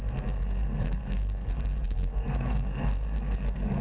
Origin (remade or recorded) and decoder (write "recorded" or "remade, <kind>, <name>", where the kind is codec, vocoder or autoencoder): remade, codec, SNAC